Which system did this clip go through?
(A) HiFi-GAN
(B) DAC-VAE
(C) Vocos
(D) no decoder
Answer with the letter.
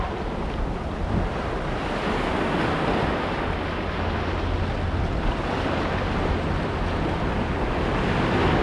D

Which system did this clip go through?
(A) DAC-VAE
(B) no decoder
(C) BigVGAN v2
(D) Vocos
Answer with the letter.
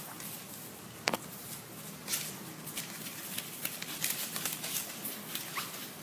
B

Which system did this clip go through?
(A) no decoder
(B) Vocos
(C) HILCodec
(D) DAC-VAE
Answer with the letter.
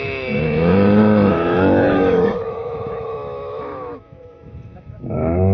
D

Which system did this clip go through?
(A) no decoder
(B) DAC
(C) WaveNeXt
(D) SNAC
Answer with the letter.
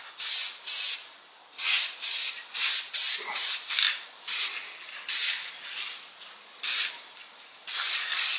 A